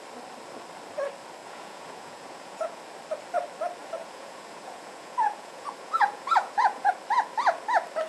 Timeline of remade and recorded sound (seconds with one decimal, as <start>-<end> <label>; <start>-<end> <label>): 0.0-1.4 recorded; 1.4-2.8 remade; 2.8-3.8 recorded; 3.8-6.9 remade; 6.9-8.1 recorded